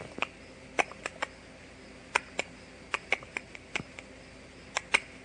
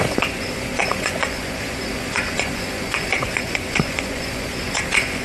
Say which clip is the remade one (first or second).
second